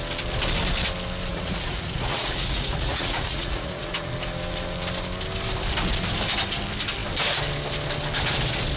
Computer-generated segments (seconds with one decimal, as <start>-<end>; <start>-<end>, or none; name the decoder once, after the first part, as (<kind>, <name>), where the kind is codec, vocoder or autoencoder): 1.3-4.1 (vocoder, Vocos)